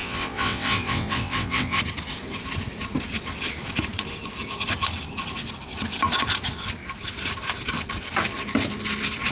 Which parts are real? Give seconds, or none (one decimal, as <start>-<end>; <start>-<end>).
1.8-9.3